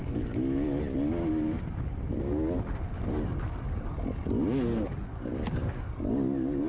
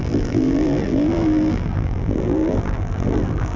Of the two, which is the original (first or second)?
first